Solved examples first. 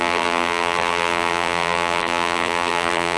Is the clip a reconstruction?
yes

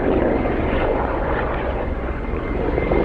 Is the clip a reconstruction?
yes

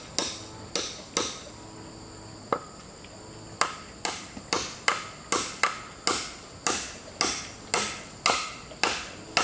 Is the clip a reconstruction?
no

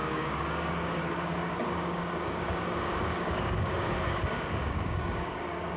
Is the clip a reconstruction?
yes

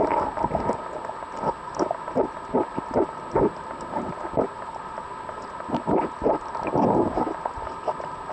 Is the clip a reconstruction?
no